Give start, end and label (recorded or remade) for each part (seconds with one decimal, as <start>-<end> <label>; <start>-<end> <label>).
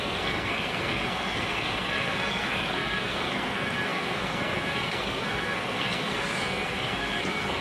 0.0-7.6 remade